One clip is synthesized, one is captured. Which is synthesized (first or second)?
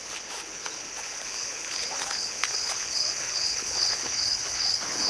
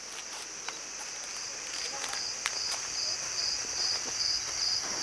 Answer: first